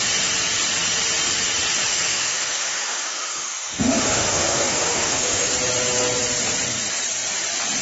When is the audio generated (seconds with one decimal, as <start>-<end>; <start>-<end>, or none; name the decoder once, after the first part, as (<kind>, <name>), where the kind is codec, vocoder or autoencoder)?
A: 1.9-5.5 (autoencoder, DAC-VAE)